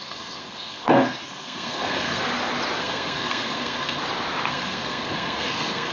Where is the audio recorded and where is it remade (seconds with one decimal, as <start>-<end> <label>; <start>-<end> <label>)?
0.0-2.2 remade; 2.2-2.8 recorded; 2.8-4.0 remade; 4.0-4.5 recorded; 4.5-5.9 remade